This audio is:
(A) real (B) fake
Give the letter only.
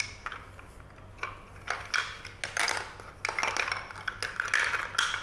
A